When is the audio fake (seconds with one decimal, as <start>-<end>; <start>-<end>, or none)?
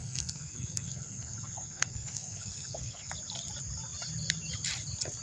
0.0-3.1